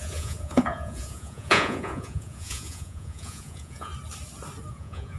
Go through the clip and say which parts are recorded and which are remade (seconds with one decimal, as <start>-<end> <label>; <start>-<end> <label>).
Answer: 0.0-3.9 remade; 3.9-4.7 recorded; 4.7-5.2 remade